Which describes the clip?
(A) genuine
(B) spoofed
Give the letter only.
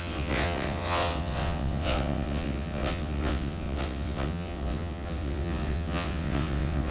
B